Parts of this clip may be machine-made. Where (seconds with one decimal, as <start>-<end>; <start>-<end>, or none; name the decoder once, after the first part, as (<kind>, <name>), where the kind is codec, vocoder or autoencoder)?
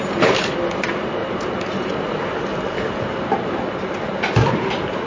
1.2-1.9 (vocoder, BigVGAN v2); 2.5-3.3